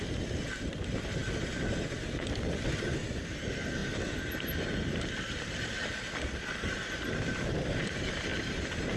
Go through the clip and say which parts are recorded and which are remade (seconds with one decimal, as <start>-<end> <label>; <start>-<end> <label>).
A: 0.0-8.3 recorded; 8.3-9.0 remade